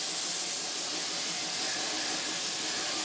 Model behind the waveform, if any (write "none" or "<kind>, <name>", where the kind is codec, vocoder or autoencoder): none